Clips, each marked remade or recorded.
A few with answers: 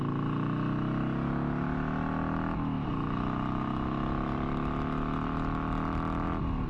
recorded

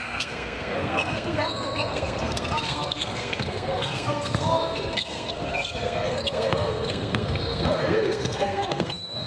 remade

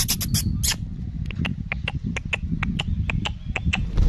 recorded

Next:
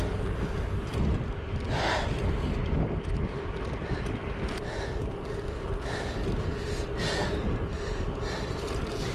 recorded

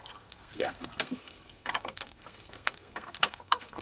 remade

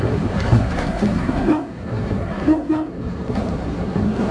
remade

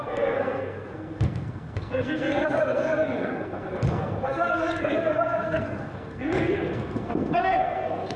remade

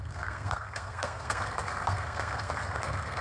remade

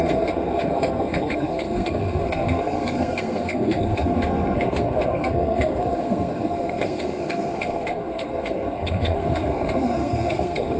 remade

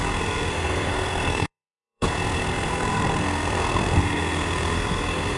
remade